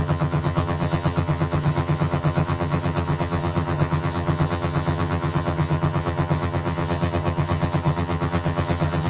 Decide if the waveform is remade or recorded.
remade